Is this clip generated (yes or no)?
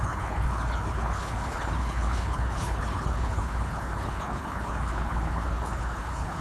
yes